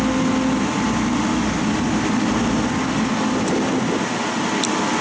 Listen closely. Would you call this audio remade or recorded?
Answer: recorded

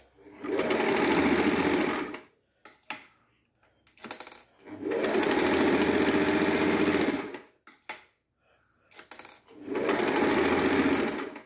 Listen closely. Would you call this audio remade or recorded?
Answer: recorded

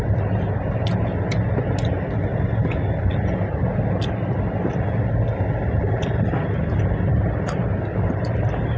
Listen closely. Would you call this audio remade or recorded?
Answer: recorded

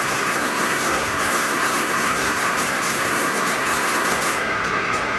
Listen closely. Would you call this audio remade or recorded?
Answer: remade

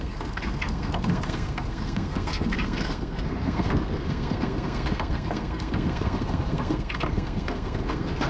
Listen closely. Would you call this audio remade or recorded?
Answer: remade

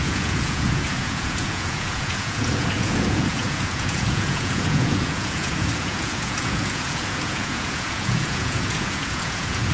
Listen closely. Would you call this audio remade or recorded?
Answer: remade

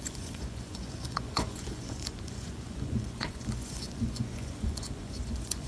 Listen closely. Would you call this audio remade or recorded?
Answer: remade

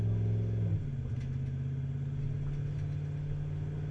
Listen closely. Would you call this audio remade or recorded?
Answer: recorded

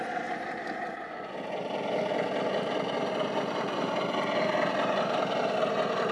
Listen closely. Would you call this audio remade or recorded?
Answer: recorded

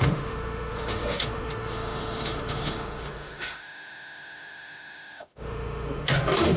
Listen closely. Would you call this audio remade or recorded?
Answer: remade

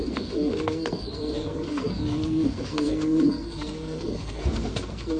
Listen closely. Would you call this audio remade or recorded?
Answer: remade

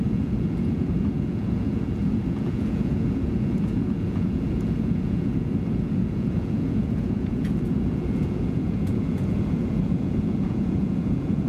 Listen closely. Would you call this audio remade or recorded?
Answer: remade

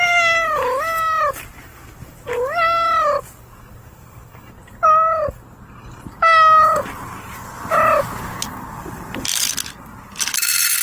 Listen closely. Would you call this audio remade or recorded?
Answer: recorded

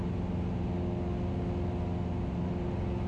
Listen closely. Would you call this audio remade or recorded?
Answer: recorded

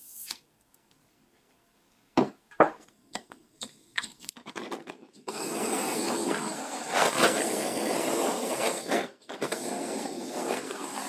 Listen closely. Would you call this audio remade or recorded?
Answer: remade